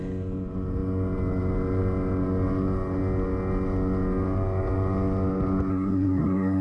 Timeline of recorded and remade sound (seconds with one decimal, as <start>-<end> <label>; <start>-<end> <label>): 0.0-5.7 recorded; 5.7-6.6 remade